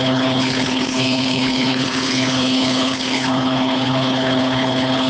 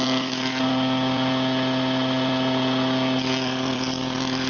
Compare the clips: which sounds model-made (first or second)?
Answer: first